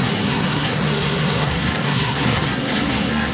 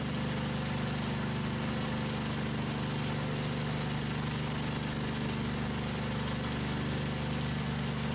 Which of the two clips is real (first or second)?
second